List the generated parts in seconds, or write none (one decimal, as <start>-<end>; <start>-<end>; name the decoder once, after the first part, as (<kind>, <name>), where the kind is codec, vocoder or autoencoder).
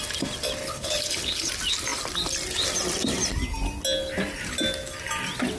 0.6-1.5 (codec, HILCodec)